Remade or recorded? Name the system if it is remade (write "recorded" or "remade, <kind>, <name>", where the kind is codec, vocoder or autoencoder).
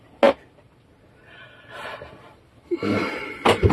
recorded